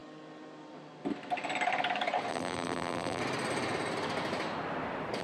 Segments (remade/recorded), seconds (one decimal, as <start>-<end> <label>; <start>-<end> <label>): 0.0-2.3 recorded; 2.3-3.2 remade; 3.2-5.2 recorded